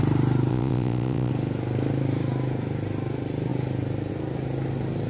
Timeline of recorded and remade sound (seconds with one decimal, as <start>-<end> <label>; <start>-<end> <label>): 0.0-0.5 recorded; 0.5-1.3 remade; 1.3-5.1 recorded